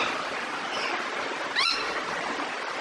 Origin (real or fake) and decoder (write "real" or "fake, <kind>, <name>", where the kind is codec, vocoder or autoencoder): real